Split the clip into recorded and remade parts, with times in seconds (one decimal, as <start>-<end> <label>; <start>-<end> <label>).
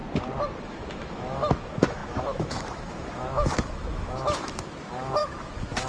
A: 0.0-0.6 recorded; 0.6-5.9 remade